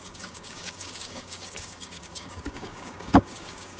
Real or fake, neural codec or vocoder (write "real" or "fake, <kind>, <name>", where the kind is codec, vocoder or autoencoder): fake, codec, DAC